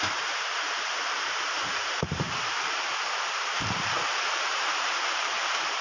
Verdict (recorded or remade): remade